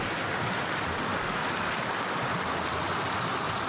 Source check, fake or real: real